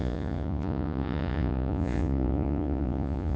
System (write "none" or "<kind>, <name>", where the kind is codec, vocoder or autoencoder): vocoder, Vocos